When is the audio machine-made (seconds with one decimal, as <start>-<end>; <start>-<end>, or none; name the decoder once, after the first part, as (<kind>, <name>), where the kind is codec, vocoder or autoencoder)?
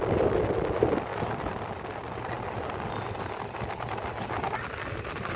none